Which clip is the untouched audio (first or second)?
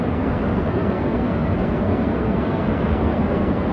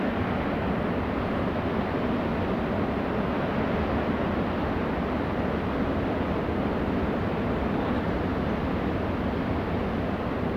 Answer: second